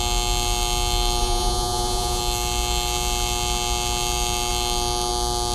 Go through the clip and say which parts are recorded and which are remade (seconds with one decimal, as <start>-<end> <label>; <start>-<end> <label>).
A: 0.0-1.2 recorded; 1.2-2.2 remade; 2.2-5.5 recorded